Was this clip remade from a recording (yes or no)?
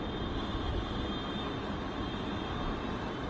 no